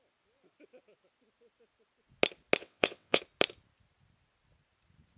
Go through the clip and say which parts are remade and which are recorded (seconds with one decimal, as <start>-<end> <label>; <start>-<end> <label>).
0.0-2.6 recorded; 2.6-3.2 remade; 3.2-5.2 recorded